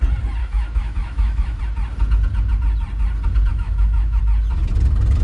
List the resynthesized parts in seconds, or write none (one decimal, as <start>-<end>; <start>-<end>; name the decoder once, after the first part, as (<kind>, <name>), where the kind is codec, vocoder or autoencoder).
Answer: 0.4-1.6 (autoencoder, DAC-VAE); 3.5-4.2